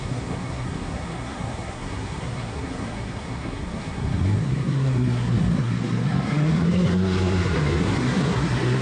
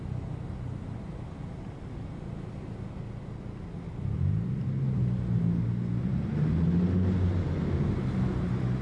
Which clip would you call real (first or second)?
second